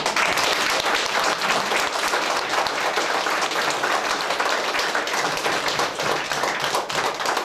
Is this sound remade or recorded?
remade